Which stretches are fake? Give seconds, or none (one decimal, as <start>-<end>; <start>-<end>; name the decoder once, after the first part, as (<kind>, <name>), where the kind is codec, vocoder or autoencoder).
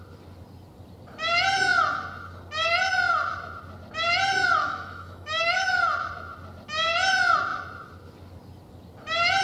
4.6-5.8 (autoencoder, DAC-VAE)